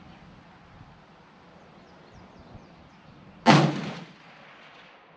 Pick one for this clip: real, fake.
real